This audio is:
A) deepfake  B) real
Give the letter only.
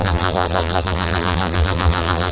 A